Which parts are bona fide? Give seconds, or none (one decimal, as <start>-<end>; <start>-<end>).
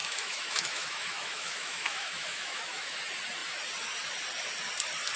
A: 3.0-5.2